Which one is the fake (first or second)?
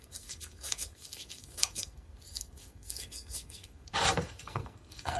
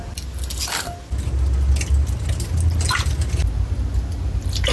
first